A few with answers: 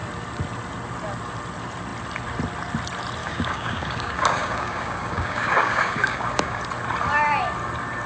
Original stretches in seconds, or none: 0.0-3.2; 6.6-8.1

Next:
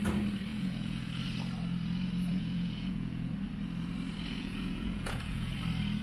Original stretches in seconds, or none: 0.0-0.5; 1.2-2.3; 3.3-4.3; 5.6-6.0

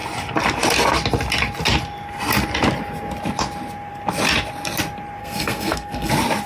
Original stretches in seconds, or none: 0.0-5.2; 6.1-6.5

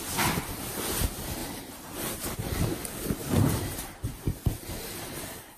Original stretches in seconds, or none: 0.0-1.4; 2.6-3.2

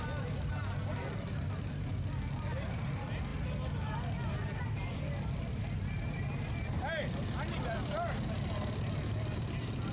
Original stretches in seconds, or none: 0.0-9.9

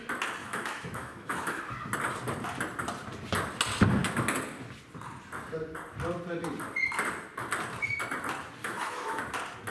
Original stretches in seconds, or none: 0.0-0.4; 1.6-8.6; 9.2-9.7